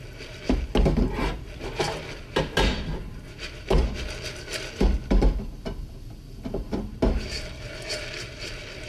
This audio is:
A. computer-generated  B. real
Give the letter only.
B